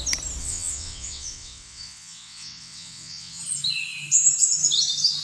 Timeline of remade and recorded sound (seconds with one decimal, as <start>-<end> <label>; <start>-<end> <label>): 0.0-0.4 recorded; 0.4-3.4 remade; 3.4-5.2 recorded